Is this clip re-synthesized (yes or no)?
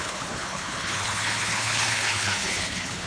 yes